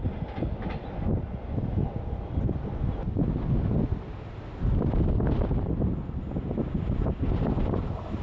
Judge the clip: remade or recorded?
recorded